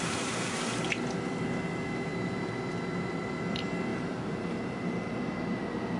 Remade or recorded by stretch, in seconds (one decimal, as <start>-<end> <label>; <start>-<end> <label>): 0.0-3.9 recorded; 3.9-5.6 remade; 5.6-6.0 recorded